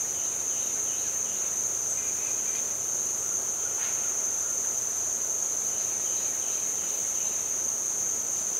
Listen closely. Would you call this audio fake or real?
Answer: real